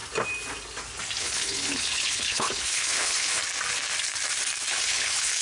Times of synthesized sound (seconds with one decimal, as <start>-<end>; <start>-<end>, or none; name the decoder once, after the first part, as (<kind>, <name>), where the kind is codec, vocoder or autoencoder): 1.2-3.4 (codec, HILCodec); 4.7-5.4